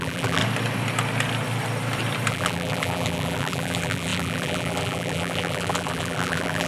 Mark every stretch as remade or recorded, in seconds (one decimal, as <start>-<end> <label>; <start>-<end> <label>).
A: 0.0-0.4 remade; 0.4-2.3 recorded; 2.3-6.7 remade